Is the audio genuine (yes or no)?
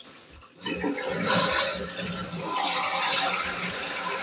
no